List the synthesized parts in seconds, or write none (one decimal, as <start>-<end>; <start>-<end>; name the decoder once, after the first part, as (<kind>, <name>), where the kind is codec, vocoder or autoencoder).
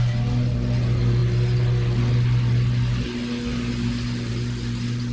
none